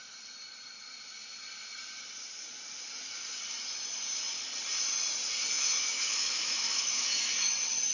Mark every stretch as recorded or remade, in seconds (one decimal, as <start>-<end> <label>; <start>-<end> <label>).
0.0-5.5 recorded; 5.5-7.5 remade; 7.5-7.9 recorded